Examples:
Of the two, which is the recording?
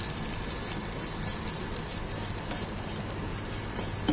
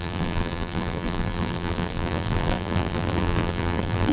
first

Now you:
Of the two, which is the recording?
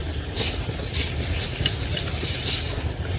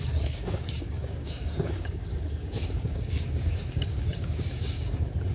first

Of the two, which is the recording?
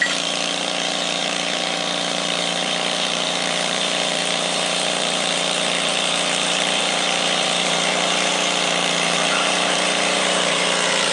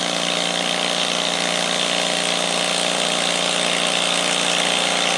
second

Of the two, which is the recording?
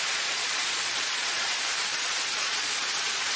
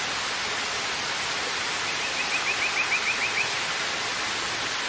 second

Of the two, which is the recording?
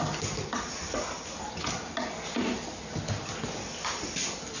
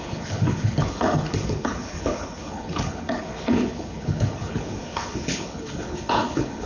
first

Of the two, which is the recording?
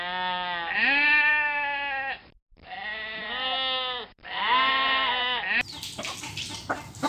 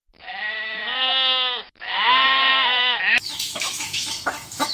first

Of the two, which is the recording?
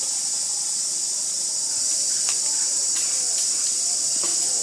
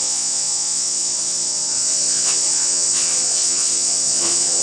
first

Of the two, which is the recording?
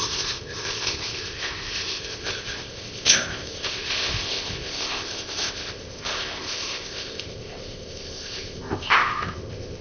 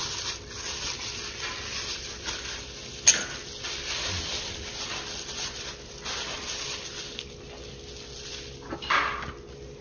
second